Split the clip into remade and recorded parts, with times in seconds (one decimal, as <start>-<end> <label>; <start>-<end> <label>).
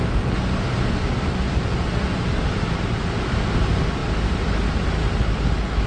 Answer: 0.0-5.9 recorded